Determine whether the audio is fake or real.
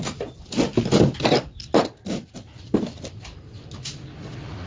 real